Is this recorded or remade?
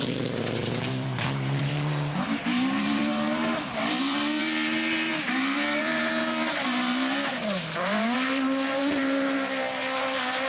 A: remade